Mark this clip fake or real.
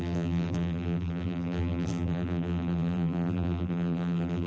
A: fake